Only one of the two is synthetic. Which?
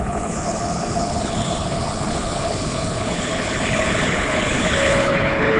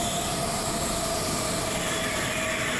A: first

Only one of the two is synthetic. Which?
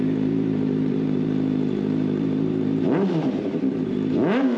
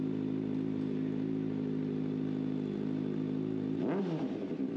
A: first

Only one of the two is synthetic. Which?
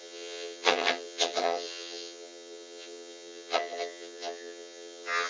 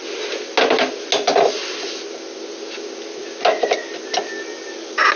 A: first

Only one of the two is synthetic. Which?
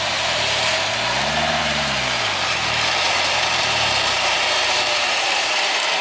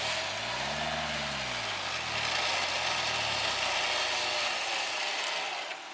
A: first